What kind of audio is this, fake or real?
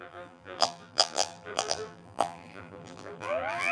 fake